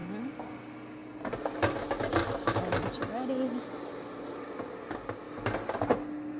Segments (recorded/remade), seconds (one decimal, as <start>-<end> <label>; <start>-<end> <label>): 0.0-6.4 recorded